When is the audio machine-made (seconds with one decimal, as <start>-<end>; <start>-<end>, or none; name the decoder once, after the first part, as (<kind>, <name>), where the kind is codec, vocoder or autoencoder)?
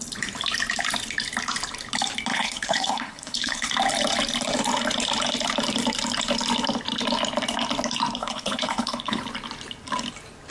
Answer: 2.3-3.7 (codec, HILCodec); 8.2-9.2